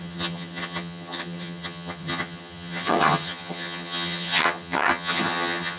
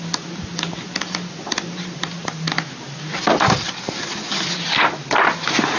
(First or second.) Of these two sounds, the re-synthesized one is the first